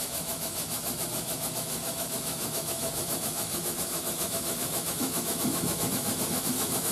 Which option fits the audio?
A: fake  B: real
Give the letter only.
A